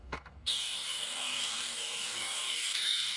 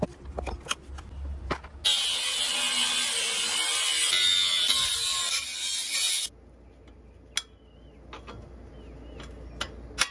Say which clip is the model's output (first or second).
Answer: first